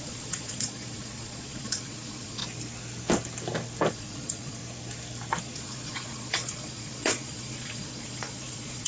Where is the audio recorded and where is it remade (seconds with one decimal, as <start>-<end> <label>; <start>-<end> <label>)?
0.0-2.4 remade; 2.4-3.9 recorded; 3.9-4.6 remade; 4.6-5.4 recorded; 5.4-8.9 remade